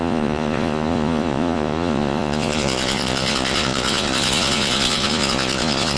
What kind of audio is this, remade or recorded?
remade